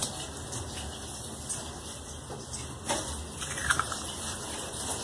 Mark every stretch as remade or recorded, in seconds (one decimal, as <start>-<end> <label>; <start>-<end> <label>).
0.0-5.0 recorded